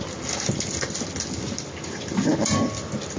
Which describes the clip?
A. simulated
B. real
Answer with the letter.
B